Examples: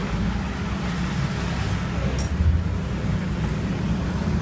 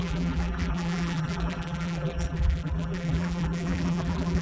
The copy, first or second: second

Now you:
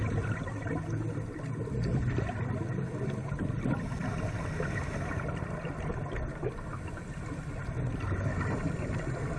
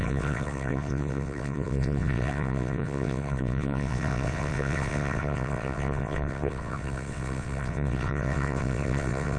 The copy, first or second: second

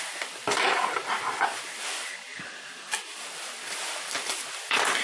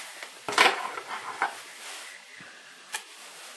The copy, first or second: first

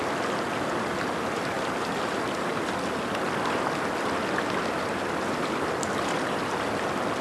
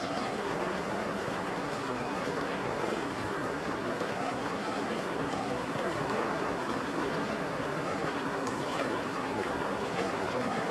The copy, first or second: second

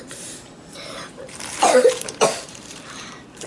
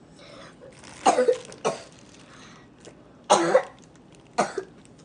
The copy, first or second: first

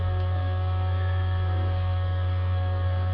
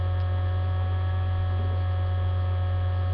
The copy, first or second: first